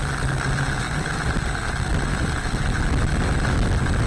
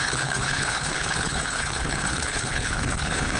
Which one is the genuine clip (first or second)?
first